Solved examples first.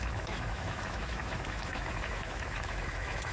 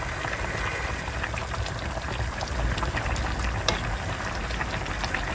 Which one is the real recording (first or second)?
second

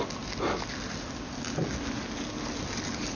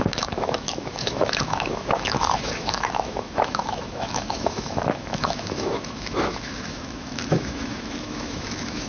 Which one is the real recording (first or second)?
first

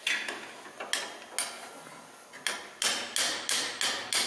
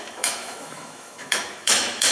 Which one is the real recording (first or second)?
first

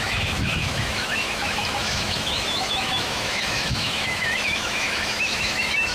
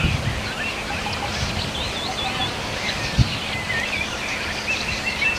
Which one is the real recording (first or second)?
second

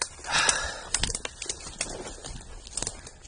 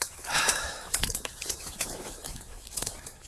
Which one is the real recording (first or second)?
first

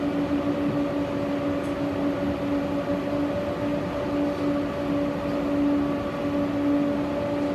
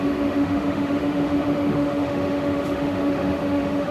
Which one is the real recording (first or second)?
first